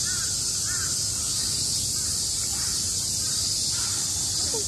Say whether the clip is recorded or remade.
remade